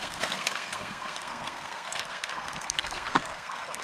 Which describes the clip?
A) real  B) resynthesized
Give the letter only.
B